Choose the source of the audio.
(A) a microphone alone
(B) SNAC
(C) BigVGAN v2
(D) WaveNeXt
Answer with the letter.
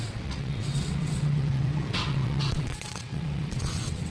D